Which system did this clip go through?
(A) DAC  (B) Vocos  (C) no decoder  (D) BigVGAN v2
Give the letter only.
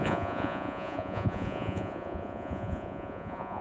B